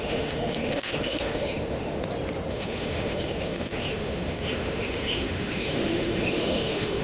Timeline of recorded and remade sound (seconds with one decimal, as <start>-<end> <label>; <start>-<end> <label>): 0.0-2.0 remade; 2.0-2.5 recorded; 2.5-7.0 remade